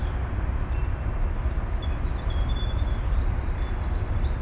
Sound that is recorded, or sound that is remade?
recorded